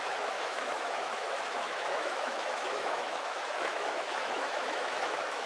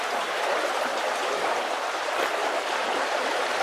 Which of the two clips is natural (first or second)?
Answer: second